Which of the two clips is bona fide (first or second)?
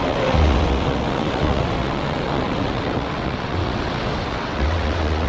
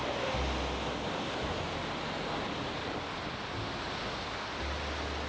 second